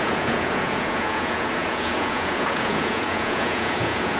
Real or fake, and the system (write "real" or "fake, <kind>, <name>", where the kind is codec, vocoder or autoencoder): fake, vocoder, Vocos